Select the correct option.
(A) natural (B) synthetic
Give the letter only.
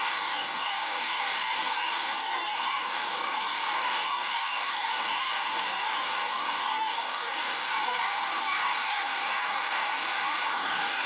B